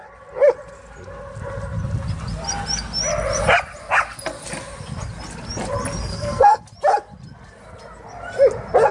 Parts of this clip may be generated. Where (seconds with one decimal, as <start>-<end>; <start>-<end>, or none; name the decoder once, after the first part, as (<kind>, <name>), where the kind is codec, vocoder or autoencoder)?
6.1-6.6 (codec, SNAC)